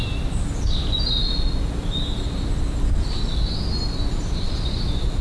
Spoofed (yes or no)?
no